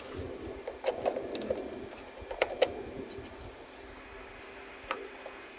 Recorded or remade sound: recorded